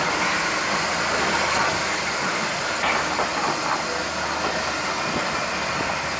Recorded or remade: recorded